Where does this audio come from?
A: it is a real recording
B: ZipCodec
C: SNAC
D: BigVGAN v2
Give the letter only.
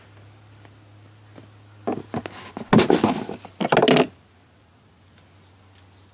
A